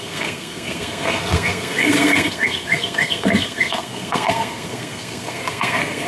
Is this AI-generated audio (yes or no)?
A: yes